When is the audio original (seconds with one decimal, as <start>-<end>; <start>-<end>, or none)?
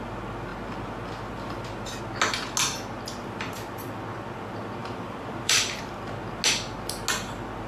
0.0-4.8; 5.8-7.7